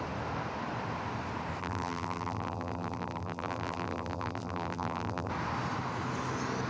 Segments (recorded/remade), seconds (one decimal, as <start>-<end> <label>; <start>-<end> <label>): 0.0-1.6 recorded; 1.6-5.3 remade; 5.3-6.7 recorded